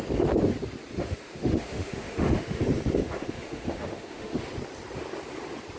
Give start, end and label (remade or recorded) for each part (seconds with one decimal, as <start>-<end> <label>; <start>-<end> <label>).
0.0-1.0 recorded; 1.0-2.6 remade; 2.6-3.0 recorded; 3.0-4.4 remade; 4.4-5.8 recorded